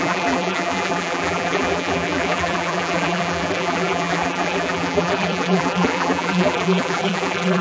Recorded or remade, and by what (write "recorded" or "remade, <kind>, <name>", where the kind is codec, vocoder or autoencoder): remade, vocoder, BigVGAN v2